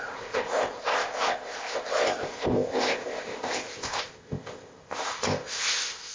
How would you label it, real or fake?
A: fake